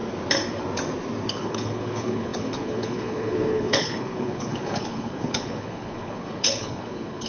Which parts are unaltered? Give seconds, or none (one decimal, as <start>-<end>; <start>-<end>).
0.0-1.3